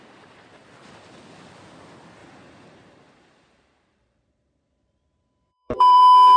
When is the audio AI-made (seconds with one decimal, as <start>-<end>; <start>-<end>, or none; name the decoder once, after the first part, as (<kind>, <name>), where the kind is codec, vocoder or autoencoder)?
2.2-6.0 (vocoder, BigVGAN v2)